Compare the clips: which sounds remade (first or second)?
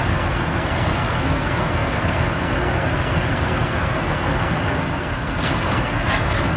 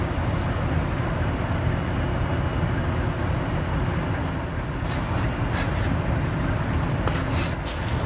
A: first